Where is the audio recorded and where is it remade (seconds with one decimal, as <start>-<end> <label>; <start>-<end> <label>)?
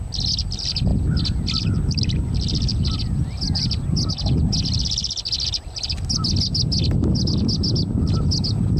0.0-8.8 recorded